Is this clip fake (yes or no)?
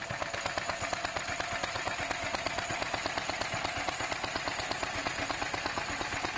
no